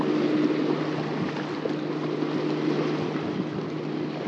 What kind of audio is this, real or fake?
real